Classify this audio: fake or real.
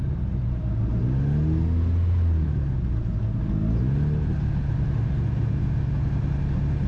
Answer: real